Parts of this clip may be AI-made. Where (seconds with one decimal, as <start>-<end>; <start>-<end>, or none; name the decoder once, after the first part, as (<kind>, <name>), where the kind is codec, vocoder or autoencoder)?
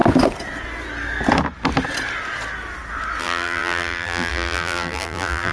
3.2-5.5 (vocoder, BigVGAN v2)